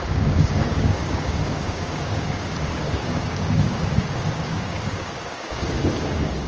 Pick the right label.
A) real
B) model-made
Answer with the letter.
B